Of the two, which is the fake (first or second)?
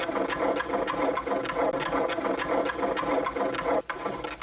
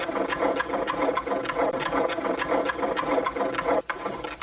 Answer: second